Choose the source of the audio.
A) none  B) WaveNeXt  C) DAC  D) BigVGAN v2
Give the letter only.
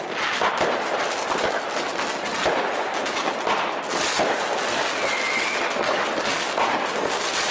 A